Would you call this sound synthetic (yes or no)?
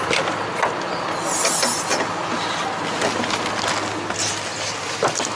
no